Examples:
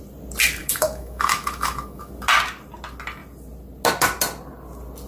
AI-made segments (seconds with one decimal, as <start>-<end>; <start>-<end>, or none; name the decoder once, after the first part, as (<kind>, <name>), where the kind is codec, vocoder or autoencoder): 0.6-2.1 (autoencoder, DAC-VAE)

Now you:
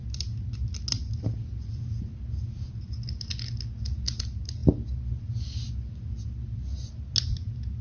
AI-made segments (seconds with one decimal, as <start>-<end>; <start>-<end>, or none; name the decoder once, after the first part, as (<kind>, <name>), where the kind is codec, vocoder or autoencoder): none

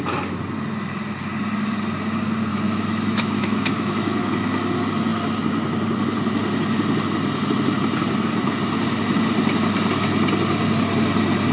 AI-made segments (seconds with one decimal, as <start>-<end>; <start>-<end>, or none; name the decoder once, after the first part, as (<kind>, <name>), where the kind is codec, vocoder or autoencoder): 2.5-4.3 (autoencoder, DAC-VAE)

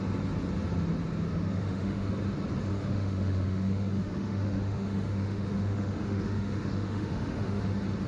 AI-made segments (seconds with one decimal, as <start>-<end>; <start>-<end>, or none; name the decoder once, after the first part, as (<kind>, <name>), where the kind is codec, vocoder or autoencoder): 1.3-2.1 (autoencoder, DAC-VAE); 2.7-7.6

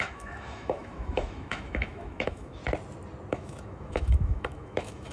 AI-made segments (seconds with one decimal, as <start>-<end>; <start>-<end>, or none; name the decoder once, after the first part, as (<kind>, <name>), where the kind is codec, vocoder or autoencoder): 0.0-2.6 (autoencoder, DAC-VAE); 3.3-5.1

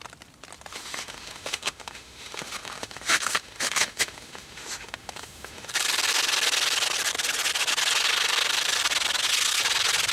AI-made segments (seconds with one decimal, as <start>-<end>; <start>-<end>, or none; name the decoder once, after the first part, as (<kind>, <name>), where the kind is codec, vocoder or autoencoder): 0.7-5.7 (autoencoder, DAC-VAE)